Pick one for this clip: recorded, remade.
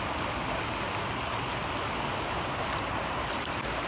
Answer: recorded